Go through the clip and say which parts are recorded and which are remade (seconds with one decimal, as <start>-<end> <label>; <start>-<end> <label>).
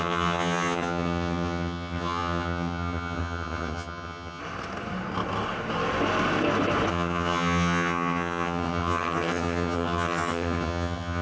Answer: 0.0-4.4 remade; 4.4-6.9 recorded; 6.9-11.2 remade